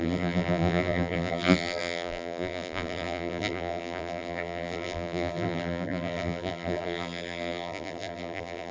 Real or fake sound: fake